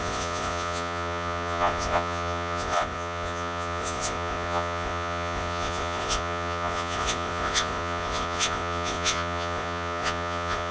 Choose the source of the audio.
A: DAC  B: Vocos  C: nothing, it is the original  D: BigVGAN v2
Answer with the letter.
B